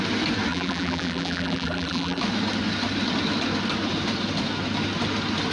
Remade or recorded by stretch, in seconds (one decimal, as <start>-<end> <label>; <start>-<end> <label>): 0.0-0.5 recorded; 0.5-2.2 remade; 2.2-5.5 recorded